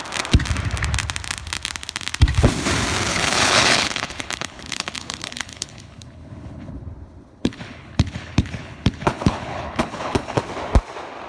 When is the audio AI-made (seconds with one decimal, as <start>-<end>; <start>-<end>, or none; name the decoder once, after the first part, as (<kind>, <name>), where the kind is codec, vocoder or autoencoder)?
3.1-6.7 (codec, HILCodec); 7.4-10.4